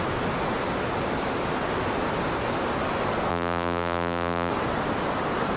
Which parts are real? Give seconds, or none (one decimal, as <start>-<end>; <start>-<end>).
0.0-3.3; 4.5-5.6